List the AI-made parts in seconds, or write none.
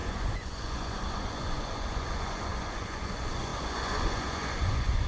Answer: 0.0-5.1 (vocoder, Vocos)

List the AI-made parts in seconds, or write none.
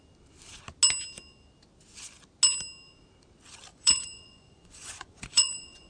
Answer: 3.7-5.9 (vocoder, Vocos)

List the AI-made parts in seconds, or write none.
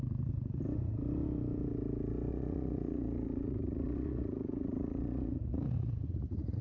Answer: 2.3-6.6 (vocoder, Vocos)